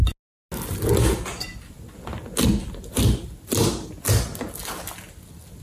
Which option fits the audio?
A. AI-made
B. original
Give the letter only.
B